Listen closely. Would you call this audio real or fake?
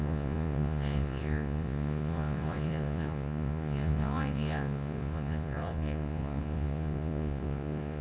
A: fake